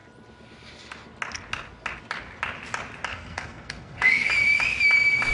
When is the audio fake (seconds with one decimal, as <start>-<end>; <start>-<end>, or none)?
3.1-4.3